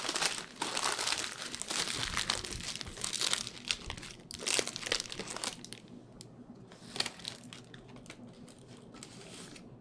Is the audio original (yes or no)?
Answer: yes